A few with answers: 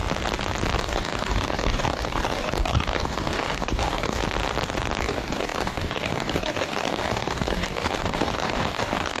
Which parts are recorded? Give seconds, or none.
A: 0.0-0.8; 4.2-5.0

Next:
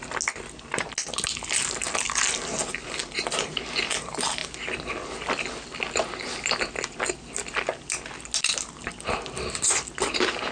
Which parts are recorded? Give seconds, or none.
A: 0.0-10.5

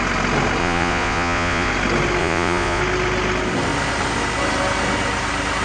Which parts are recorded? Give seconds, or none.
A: 0.0-0.6; 1.7-2.2; 2.8-5.6

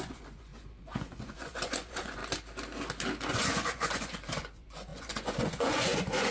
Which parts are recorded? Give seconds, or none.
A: 2.2-3.3